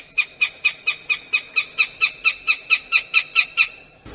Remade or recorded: recorded